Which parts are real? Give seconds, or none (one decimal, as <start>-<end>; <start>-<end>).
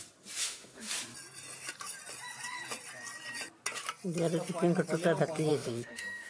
0.0-0.4; 0.9-5.5